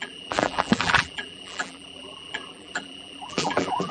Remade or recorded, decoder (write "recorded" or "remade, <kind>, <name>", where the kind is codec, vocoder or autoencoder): remade, vocoder, BigVGAN v2